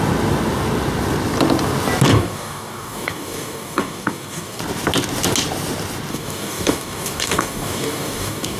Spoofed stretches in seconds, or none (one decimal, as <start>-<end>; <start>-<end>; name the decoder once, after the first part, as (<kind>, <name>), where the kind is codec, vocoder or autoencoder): 2.1-4.6 (codec, DAC); 6.1-8.6